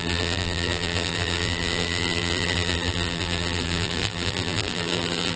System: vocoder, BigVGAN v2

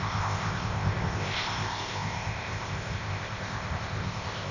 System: codec, ZipCodec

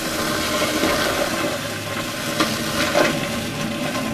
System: none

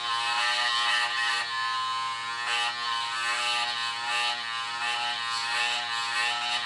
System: none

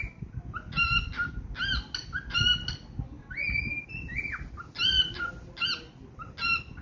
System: none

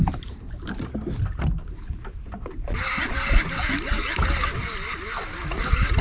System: none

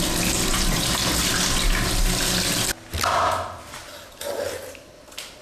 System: none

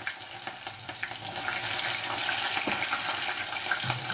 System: none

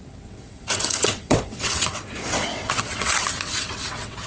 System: vocoder, WaveNeXt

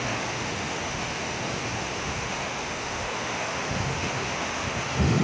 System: autoencoder, DAC-VAE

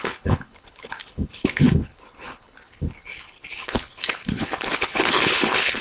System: codec, HILCodec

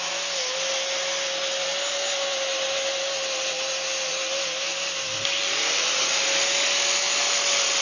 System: none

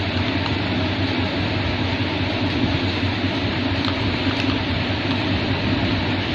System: none